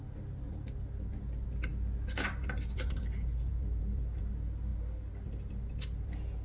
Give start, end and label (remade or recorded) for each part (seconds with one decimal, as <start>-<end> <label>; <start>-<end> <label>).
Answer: 0.0-6.4 recorded